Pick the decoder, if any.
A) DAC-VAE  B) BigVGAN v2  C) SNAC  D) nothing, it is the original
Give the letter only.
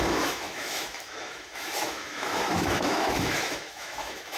A